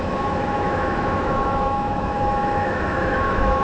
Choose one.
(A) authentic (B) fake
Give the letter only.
B